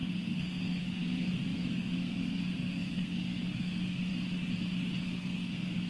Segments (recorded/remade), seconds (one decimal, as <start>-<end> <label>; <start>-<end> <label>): 0.0-4.1 remade; 4.1-5.0 recorded; 5.0-5.9 remade